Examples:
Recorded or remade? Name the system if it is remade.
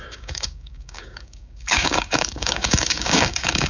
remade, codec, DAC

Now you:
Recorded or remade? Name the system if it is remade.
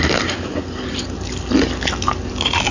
recorded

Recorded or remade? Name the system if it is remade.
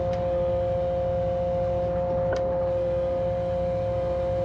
recorded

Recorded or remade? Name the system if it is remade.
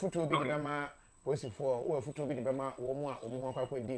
remade, vocoder, WaveNeXt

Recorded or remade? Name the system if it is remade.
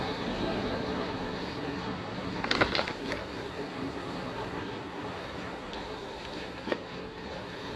remade, codec, SNAC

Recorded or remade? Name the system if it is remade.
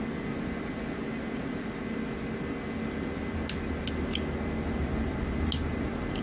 recorded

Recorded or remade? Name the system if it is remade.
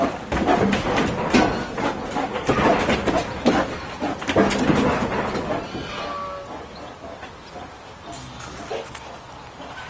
recorded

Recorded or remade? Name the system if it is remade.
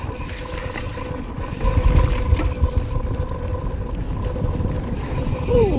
remade, vocoder, BigVGAN v2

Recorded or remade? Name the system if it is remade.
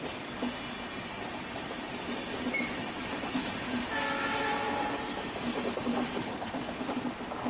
recorded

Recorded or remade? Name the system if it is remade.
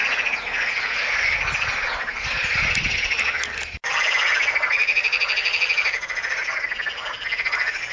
recorded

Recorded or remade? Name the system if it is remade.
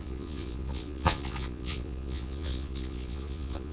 remade, vocoder, Vocos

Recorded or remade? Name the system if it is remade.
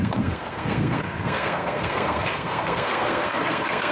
remade, codec, SNAC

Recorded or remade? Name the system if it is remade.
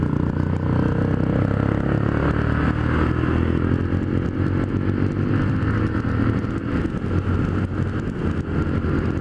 recorded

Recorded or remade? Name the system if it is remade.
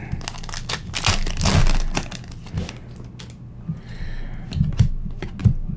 recorded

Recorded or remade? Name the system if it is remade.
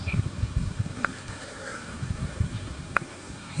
remade, codec, SNAC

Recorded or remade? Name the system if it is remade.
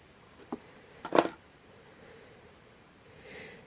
remade, vocoder, BigVGAN v2